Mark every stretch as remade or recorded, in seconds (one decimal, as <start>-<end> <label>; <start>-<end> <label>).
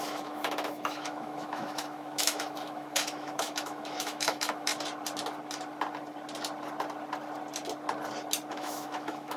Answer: 0.0-4.7 remade; 4.7-8.5 recorded; 8.5-9.4 remade